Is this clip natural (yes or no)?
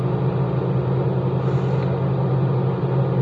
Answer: yes